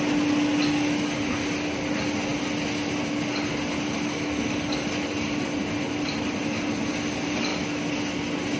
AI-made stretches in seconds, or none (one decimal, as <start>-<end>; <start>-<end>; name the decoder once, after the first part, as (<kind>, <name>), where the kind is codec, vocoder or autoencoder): none